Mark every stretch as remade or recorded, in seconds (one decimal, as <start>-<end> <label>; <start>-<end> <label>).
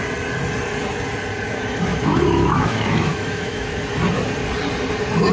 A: 0.0-1.9 recorded; 1.9-3.9 remade; 3.9-5.3 recorded